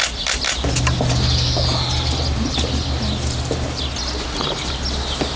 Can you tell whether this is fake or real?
real